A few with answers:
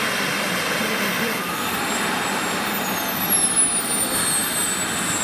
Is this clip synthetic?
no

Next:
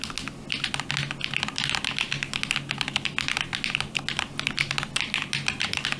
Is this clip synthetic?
no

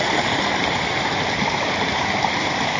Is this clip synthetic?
yes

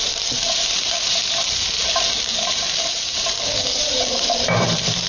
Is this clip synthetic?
yes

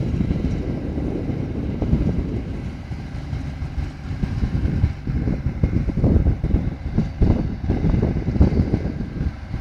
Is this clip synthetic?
yes